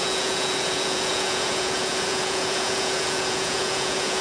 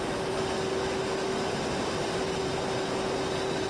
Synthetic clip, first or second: first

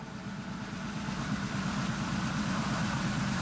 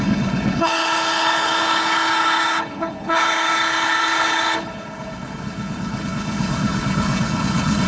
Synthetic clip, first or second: second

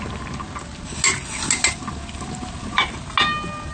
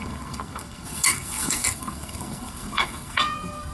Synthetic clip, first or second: second